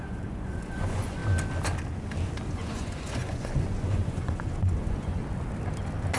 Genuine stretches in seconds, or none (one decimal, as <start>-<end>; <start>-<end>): 1.2-2.5; 5.2-6.2